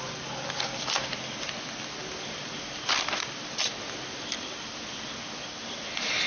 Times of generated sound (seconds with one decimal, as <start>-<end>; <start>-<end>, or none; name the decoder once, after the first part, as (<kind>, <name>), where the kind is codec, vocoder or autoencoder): none